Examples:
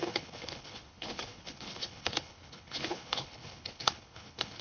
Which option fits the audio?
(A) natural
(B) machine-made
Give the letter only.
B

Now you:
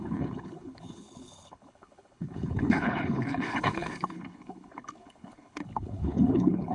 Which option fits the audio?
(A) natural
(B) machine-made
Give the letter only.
B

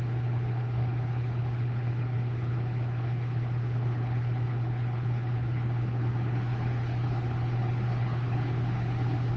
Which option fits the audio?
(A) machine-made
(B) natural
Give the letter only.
A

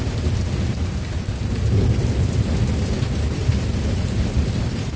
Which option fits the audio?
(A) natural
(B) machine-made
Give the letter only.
A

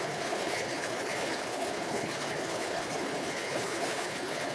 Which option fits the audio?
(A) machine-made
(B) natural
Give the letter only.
A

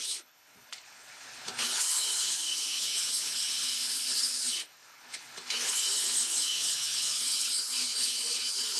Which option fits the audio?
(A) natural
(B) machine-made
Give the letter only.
B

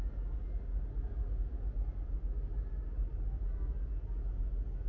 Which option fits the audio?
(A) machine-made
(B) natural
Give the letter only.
B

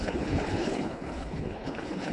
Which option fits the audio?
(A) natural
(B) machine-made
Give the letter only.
B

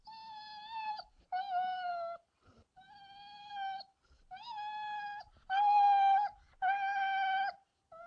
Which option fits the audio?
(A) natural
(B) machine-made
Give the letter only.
A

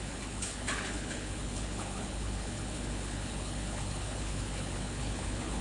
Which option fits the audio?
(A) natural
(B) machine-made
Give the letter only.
B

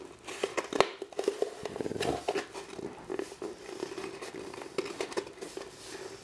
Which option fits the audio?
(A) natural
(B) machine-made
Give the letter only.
A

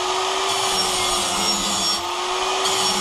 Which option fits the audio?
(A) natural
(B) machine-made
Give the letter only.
A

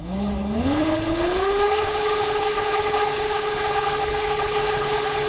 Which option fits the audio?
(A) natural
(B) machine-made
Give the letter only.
B